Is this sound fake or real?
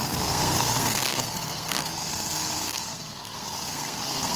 fake